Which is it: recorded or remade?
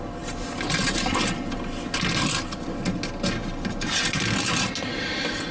recorded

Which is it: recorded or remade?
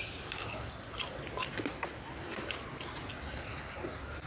recorded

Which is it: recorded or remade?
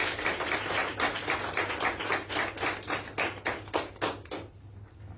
recorded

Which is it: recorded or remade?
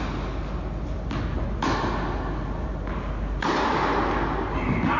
recorded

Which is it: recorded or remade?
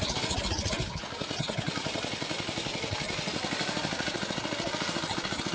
recorded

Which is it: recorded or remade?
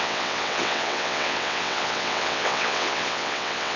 remade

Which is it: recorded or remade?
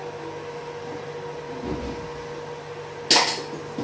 recorded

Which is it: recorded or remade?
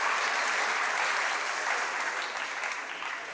recorded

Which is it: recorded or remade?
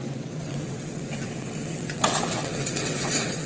remade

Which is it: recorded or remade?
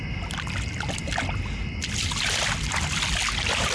recorded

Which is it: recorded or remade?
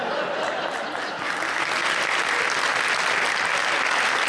recorded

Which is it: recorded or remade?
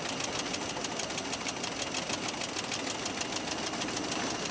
recorded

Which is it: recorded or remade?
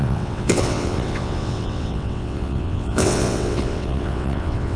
remade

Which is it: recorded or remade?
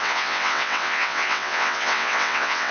remade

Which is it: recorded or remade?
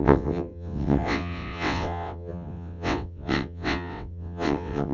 remade